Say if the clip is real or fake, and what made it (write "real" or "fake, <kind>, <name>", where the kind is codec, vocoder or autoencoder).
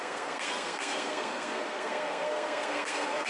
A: fake, codec, SNAC